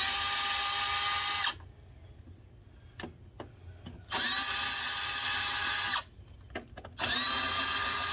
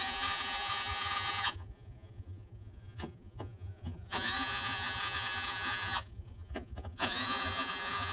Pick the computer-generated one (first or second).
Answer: second